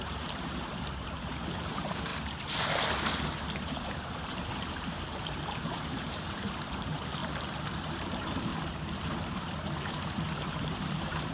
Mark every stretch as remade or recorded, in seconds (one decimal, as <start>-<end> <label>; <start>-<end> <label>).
0.0-2.1 remade; 2.1-3.6 recorded; 3.6-7.2 remade; 7.2-7.8 recorded; 7.8-8.5 remade; 8.5-10.5 recorded; 10.5-11.3 remade